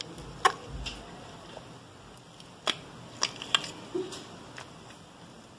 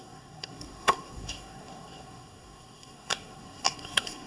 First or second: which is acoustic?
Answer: first